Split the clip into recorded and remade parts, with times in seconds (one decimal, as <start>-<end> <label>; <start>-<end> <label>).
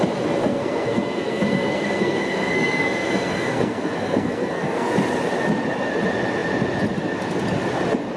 0.0-0.4 recorded; 0.4-4.9 remade; 4.9-8.2 recorded